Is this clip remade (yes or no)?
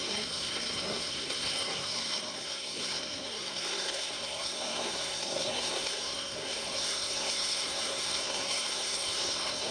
yes